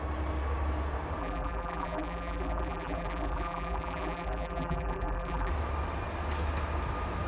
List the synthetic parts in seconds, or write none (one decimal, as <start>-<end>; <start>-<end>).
1.2-5.5